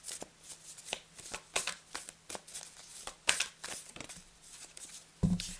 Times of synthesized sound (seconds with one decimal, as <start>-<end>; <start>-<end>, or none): 2.9-4.9